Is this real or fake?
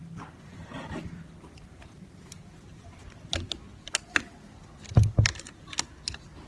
fake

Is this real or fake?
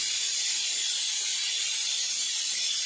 real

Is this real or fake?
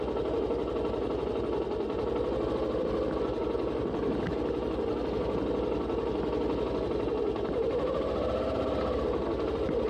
real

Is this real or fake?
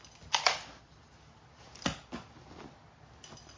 real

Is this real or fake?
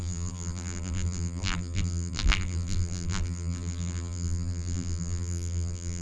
fake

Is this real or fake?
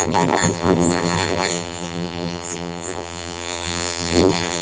fake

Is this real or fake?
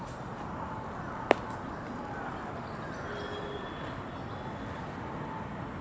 real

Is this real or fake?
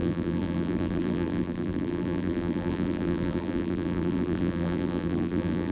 fake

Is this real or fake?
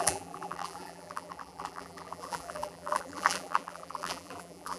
fake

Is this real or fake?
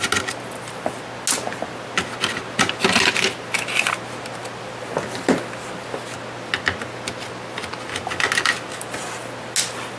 real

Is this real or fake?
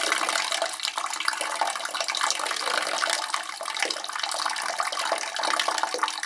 real